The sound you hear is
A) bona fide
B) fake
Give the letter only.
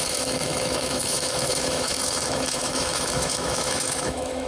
B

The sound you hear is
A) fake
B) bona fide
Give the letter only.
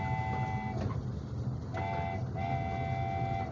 B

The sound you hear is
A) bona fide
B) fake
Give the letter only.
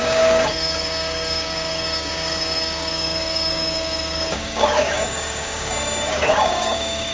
B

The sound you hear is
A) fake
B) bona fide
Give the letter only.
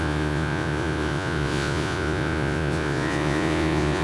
A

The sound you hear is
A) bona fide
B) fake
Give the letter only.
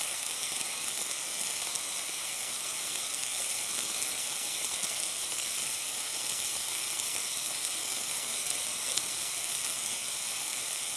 B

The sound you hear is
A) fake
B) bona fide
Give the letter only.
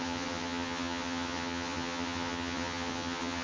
A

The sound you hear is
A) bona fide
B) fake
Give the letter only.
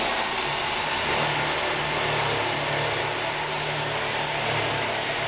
A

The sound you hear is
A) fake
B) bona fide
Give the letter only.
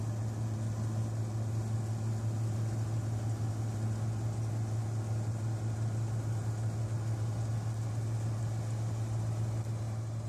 B